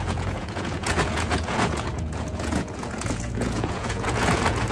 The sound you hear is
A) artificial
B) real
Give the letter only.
A